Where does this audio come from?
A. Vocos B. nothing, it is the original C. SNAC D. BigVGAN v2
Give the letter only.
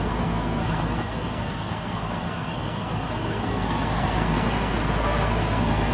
C